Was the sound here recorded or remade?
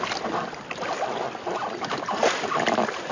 recorded